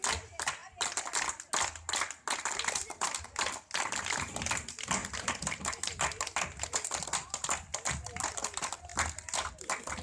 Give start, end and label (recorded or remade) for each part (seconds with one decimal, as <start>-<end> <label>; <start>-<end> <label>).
0.0-10.0 recorded